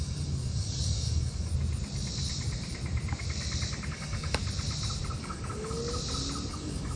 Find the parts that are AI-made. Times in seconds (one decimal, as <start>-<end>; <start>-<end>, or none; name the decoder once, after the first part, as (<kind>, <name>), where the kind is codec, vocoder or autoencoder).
0.0-1.5 (codec, DAC); 3.9-4.4; 5.2-5.8; 6.5-7.0